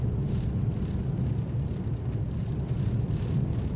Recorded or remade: recorded